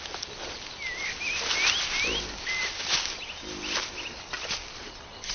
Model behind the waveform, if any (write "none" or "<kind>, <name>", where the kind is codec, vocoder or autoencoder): none